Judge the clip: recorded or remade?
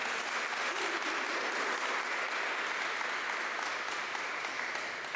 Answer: recorded